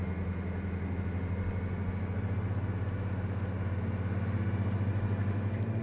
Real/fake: real